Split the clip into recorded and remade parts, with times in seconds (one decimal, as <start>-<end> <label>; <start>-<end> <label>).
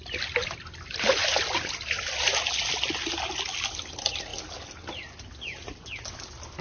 0.0-6.6 recorded